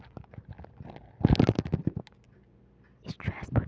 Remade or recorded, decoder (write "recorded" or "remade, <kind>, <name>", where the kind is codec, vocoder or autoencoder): recorded